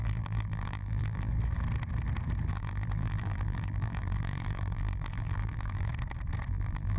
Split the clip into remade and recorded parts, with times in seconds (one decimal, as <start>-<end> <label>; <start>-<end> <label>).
0.0-1.3 remade; 1.3-2.5 recorded; 2.5-5.9 remade; 5.9-6.5 recorded; 6.5-7.0 remade

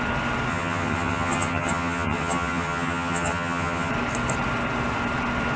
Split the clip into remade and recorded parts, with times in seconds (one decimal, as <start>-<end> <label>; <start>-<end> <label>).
0.0-0.5 recorded; 0.5-3.9 remade; 3.9-5.6 recorded

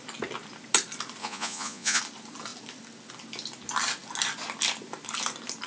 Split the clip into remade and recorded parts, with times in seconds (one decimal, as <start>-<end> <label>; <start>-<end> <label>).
0.0-1.2 recorded; 1.2-2.0 remade; 2.0-5.7 recorded

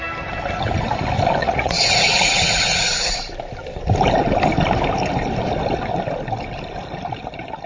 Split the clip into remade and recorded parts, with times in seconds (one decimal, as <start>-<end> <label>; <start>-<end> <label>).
0.0-1.4 recorded; 1.4-3.2 remade; 3.2-7.7 recorded